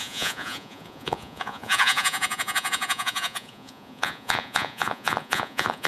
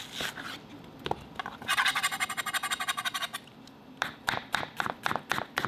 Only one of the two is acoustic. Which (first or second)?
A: second